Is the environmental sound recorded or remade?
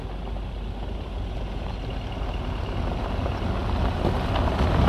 recorded